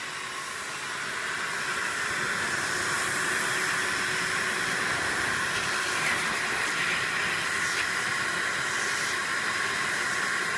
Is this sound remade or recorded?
recorded